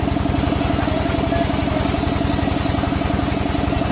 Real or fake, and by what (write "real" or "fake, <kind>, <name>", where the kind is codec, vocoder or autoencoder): real